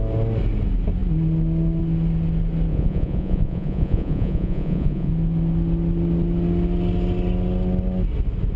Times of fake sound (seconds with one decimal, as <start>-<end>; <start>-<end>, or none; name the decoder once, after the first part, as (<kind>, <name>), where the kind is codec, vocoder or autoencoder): 2.7-5.1 (vocoder, Vocos)